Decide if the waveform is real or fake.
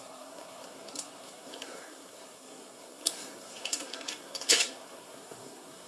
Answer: fake